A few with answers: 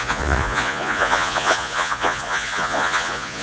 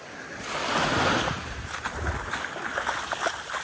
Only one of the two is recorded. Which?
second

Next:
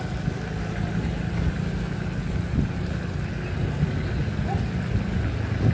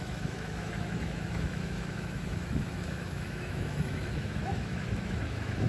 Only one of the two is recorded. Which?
first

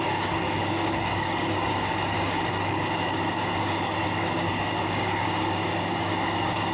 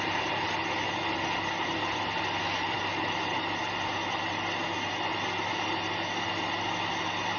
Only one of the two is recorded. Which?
second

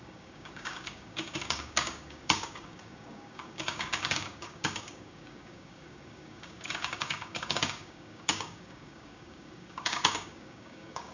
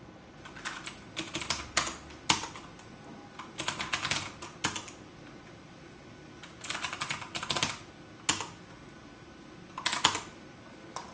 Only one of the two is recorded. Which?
second